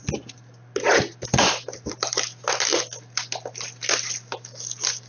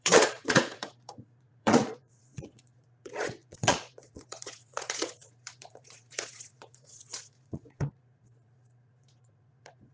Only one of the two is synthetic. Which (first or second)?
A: second